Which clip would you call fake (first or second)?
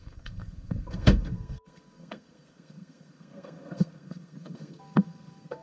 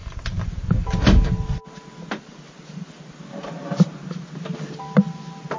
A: first